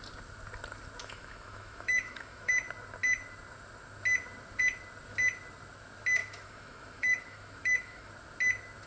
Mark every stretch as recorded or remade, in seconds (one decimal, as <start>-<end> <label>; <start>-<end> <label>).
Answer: 0.0-1.0 recorded; 1.0-2.5 remade; 2.5-6.2 recorded; 6.2-8.1 remade; 8.1-8.9 recorded